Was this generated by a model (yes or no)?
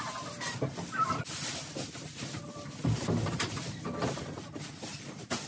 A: no